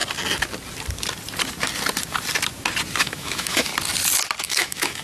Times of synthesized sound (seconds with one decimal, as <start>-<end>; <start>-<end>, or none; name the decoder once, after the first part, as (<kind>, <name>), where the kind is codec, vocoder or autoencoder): 3.0-3.7 (autoencoder, DAC-VAE); 4.4-5.0